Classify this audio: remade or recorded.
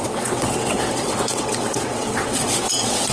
remade